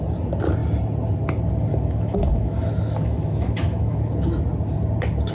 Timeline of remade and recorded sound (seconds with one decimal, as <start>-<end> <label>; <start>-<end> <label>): 0.0-1.7 recorded; 1.7-4.1 remade; 4.1-5.3 recorded